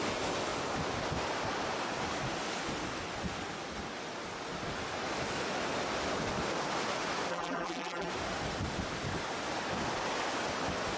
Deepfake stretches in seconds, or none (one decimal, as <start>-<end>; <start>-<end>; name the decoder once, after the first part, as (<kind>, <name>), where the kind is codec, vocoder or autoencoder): 7.3-8.1 (vocoder, BigVGAN v2)